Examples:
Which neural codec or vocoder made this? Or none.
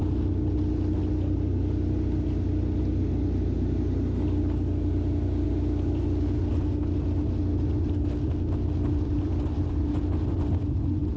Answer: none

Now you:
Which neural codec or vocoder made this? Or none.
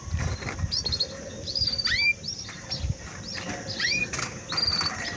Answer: none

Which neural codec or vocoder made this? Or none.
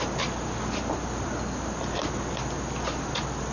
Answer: none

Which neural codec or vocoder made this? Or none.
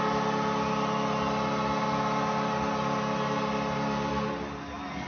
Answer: none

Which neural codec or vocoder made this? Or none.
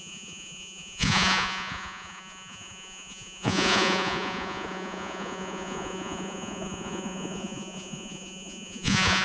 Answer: vocoder, Vocos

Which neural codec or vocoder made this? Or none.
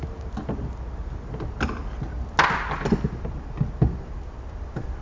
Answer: none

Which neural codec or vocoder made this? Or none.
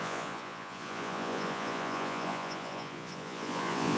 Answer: vocoder, Vocos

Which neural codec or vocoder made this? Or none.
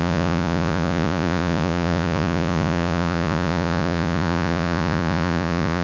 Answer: vocoder, Vocos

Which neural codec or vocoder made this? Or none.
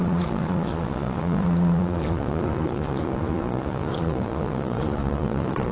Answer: vocoder, Vocos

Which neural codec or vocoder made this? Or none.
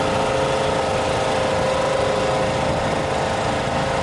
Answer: none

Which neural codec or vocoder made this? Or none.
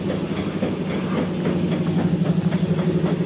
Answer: none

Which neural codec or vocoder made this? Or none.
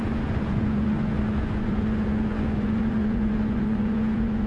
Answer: vocoder, Vocos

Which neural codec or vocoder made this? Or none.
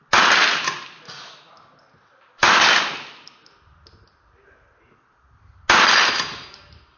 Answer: none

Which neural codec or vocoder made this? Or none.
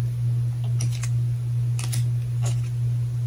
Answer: none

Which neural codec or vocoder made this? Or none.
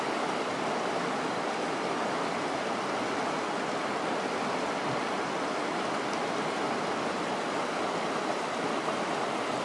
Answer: none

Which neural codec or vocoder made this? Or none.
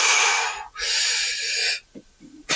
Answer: vocoder, Vocos